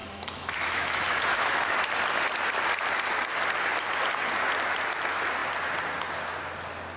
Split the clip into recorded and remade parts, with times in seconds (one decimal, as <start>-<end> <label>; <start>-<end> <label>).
0.0-1.8 remade; 1.8-7.0 recorded